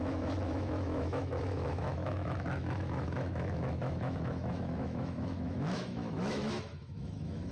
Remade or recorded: remade